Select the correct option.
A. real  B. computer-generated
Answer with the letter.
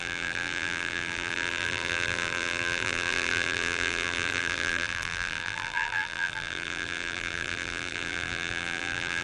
B